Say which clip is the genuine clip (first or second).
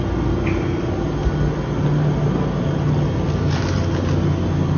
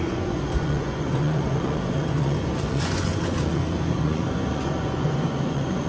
first